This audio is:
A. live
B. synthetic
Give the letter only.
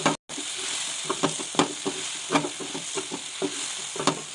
A